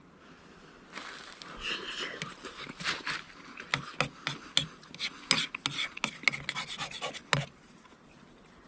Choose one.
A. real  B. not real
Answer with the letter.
A